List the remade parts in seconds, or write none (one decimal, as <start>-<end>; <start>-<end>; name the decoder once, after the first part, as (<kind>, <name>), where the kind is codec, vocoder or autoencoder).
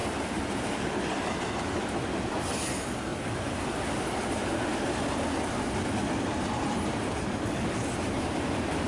none